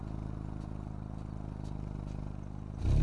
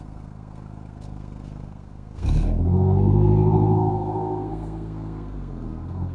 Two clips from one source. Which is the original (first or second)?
first